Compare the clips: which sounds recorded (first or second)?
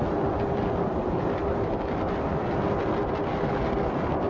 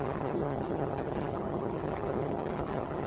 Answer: first